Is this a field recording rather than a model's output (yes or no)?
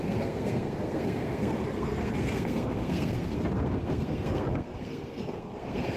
no